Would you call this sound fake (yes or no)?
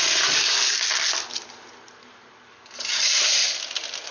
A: no